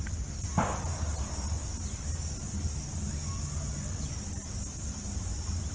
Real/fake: real